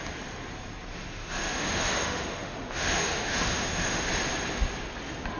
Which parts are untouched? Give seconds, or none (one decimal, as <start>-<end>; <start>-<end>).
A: 0.0-0.9; 4.1-5.4